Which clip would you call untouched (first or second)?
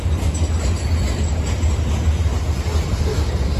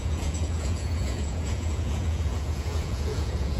first